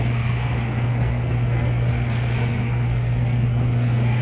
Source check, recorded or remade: remade